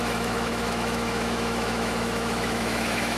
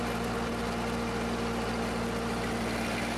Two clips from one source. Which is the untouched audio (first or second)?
second